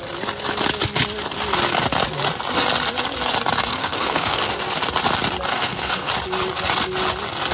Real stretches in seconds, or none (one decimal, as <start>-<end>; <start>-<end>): 0.0-3.7; 4.5-5.5; 6.1-7.5